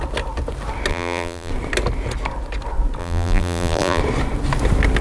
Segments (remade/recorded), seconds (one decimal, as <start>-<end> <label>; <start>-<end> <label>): 0.0-0.9 recorded; 0.9-1.5 remade; 1.5-3.0 recorded; 3.0-4.0 remade; 4.0-5.0 recorded